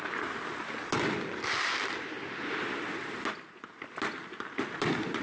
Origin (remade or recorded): recorded